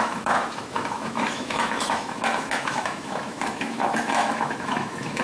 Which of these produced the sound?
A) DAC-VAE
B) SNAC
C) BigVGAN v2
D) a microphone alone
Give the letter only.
A